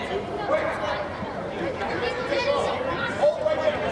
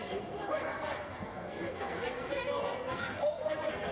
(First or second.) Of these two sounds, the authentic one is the first